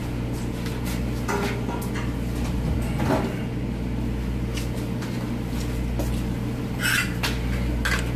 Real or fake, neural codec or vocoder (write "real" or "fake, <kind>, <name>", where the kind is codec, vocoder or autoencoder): real